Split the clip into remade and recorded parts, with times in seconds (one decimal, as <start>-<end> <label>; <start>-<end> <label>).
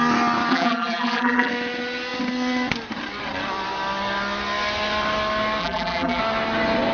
0.0-0.5 recorded; 0.5-1.5 remade; 1.5-5.6 recorded; 5.6-6.2 remade; 6.2-6.9 recorded